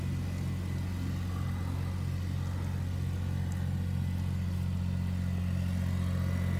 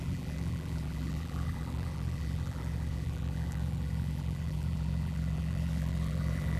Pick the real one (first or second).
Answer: first